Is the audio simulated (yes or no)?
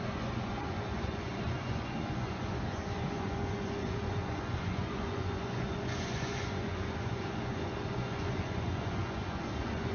yes